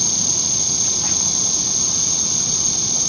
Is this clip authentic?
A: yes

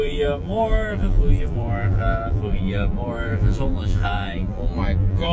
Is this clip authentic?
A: no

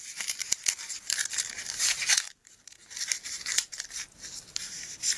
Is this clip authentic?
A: no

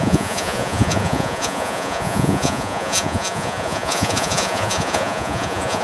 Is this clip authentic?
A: no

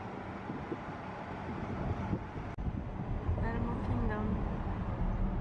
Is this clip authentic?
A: yes